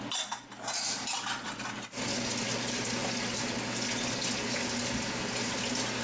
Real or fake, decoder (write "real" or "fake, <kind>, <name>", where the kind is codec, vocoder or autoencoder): real